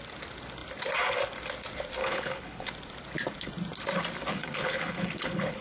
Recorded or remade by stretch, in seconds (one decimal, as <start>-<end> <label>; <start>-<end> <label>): 0.0-2.0 recorded; 2.0-2.7 remade; 2.7-4.3 recorded; 4.3-5.6 remade